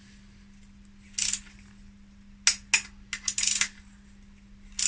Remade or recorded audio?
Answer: recorded